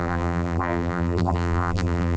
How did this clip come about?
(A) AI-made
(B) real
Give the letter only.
A